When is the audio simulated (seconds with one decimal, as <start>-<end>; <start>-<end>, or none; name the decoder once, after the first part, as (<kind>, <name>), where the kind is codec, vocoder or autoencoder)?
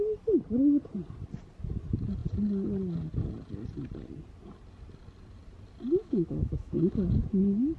6.0-7.0 (autoencoder, DAC-VAE)